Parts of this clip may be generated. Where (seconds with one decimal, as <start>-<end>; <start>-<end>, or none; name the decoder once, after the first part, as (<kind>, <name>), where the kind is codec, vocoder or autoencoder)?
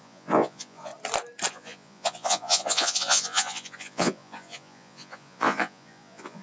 0.0-0.9 (vocoder, Vocos); 1.5-6.4